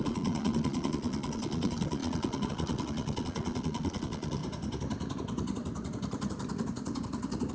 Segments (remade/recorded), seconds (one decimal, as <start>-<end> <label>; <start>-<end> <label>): 0.0-4.4 remade; 4.4-7.5 recorded